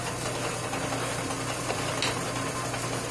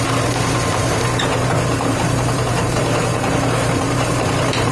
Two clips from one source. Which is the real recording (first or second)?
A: first